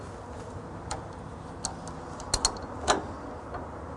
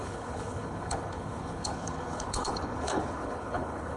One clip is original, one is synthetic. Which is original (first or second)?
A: first